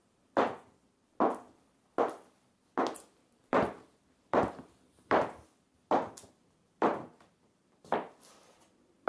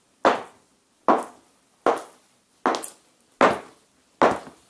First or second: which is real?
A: second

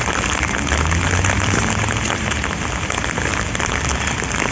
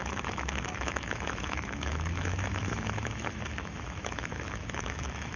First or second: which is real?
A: first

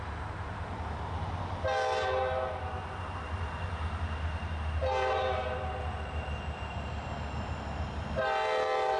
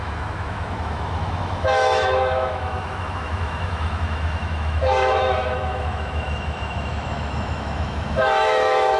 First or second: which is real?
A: first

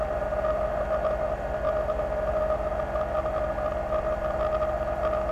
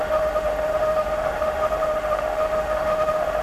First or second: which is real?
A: first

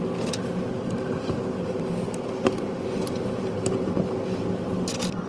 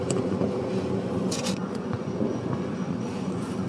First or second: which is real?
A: first